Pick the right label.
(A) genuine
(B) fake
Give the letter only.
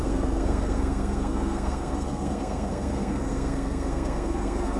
B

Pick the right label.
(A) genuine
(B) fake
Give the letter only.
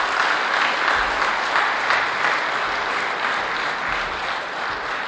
A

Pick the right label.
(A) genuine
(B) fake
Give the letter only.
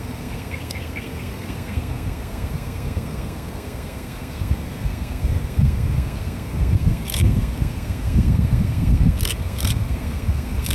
B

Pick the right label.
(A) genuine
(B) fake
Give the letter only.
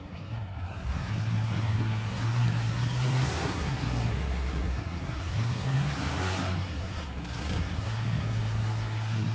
B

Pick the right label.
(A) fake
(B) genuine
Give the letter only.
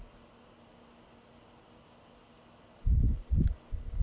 B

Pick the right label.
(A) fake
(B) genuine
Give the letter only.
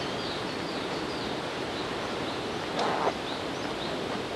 B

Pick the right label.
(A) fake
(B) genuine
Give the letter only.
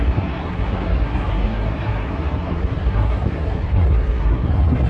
A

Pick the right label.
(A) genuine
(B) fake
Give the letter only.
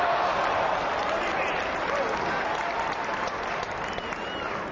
A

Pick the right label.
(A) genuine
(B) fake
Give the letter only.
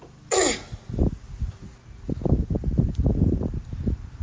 A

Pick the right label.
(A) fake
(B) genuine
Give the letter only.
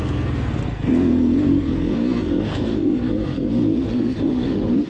A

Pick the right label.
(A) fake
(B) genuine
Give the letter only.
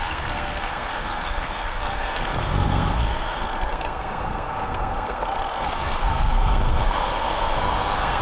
A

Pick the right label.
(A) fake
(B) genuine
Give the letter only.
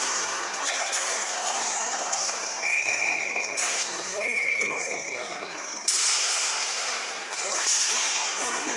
A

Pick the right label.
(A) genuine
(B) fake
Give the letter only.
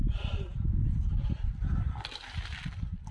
A